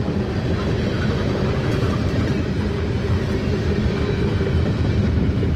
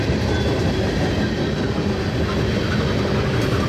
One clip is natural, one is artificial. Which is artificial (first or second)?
first